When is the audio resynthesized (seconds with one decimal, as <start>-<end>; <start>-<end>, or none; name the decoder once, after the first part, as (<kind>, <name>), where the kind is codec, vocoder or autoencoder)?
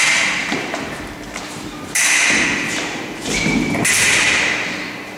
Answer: 0.4-1.1 (vocoder, BigVGAN v2)